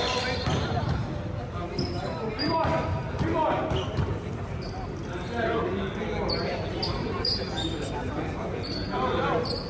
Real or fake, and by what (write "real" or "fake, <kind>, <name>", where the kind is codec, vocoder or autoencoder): real